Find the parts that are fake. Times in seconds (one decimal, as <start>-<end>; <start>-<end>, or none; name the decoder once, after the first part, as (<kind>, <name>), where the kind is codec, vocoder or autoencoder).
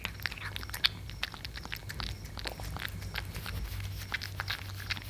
none